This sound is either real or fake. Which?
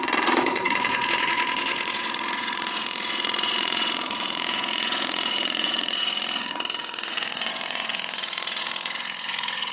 fake